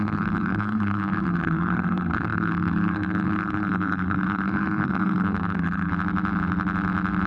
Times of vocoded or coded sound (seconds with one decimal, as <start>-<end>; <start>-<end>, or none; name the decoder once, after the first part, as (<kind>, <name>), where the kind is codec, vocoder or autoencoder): 0.0-5.9 (codec, SNAC)